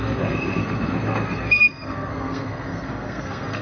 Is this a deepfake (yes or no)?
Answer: yes